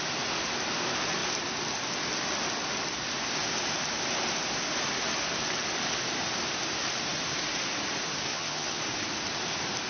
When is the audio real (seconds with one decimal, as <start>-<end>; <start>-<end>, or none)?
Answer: 0.0-8.3; 8.8-9.9